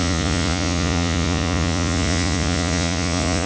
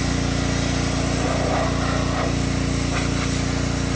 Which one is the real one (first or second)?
second